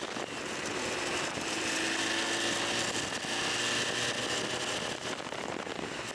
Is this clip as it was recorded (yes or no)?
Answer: yes